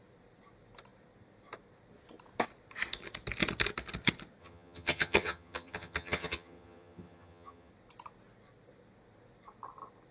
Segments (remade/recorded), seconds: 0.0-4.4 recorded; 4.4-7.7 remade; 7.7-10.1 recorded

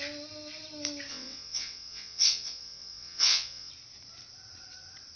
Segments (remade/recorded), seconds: 0.0-1.1 recorded; 1.1-3.7 remade; 3.7-5.2 recorded

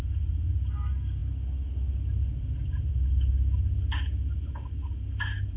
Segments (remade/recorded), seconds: 0.0-5.6 recorded

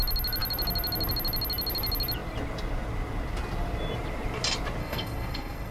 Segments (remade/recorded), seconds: 0.0-4.8 recorded; 4.8-5.7 remade

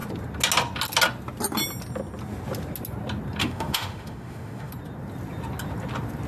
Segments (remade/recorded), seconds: 0.0-3.4 recorded; 3.4-4.7 remade; 4.7-6.3 recorded